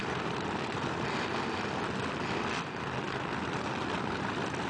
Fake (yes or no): no